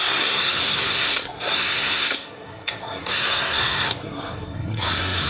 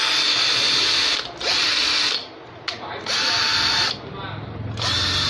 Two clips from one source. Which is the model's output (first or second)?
first